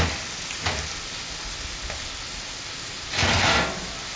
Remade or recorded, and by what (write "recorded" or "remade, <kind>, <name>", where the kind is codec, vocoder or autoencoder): recorded